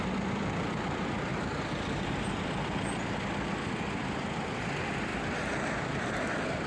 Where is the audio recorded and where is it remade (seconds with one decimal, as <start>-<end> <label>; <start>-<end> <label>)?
0.0-1.3 remade; 1.3-2.1 recorded; 2.1-5.1 remade; 5.1-5.8 recorded; 5.8-6.7 remade